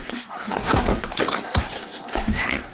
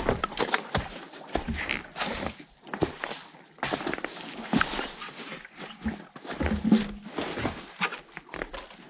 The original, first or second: second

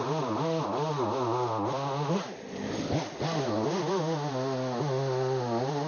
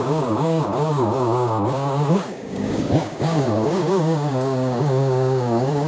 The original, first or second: first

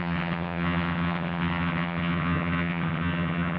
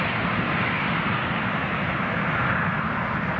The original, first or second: second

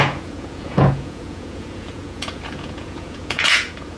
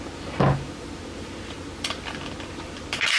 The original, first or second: second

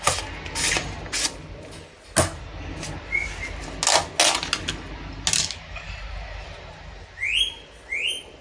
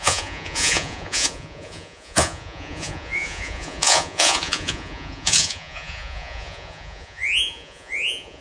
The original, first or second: first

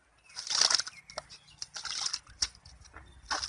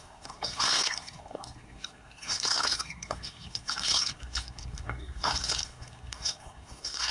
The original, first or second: first